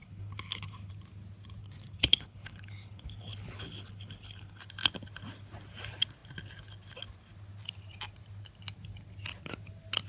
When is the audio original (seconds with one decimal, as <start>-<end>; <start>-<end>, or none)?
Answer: 0.9-1.6; 4.6-10.1